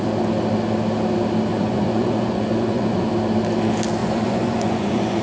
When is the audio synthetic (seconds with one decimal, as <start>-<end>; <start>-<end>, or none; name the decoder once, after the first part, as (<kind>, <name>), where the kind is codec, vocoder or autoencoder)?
1.5-3.1 (vocoder, Vocos); 4.0-5.2